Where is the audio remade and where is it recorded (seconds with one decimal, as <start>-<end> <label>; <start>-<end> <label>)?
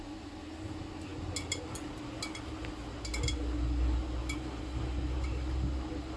0.0-6.2 recorded